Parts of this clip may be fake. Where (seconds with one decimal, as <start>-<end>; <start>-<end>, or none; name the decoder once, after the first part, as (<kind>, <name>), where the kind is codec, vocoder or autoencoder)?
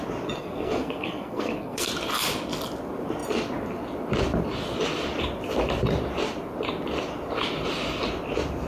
0.4-1.9 (codec, SNAC)